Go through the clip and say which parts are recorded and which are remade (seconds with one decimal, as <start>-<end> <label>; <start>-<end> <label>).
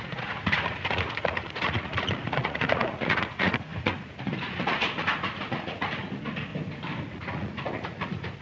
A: 0.0-6.5 remade; 6.5-7.0 recorded; 7.0-8.4 remade